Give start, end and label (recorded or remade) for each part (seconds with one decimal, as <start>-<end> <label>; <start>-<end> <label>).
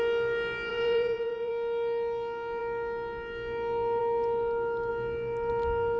0.0-0.7 recorded; 0.7-1.5 remade; 1.5-6.0 recorded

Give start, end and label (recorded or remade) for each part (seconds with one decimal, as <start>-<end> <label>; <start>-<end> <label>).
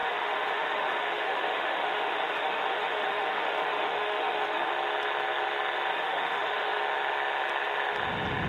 0.0-4.7 remade; 4.7-5.9 recorded; 5.9-6.8 remade; 6.8-8.5 recorded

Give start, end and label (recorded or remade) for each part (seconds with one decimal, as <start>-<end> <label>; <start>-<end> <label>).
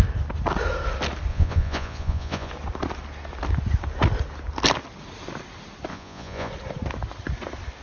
0.0-1.3 recorded; 1.3-2.5 remade; 2.5-5.9 recorded; 5.9-6.5 remade; 6.5-7.8 recorded